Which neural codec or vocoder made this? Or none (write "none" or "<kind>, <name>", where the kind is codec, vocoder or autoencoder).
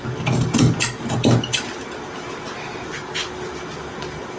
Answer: none